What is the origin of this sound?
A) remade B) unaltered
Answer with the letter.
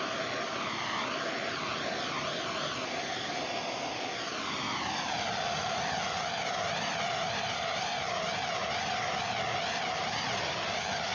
B